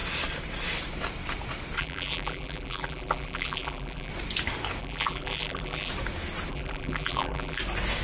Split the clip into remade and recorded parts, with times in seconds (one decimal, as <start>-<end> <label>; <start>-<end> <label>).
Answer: 0.0-1.8 recorded; 1.8-4.1 remade; 4.1-4.8 recorded; 4.8-5.9 remade; 5.9-6.5 recorded; 6.5-7.6 remade; 7.6-8.0 recorded